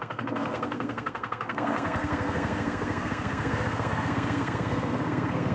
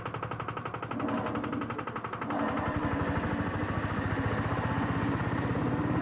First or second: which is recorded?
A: second